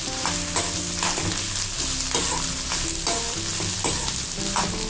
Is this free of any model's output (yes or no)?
yes